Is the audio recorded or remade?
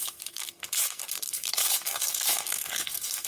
remade